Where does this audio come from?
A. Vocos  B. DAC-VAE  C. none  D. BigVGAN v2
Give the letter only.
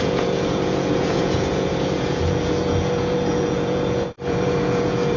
A